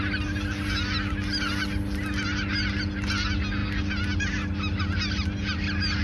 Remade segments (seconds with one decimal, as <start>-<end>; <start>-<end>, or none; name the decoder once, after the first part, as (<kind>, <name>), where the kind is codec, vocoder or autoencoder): none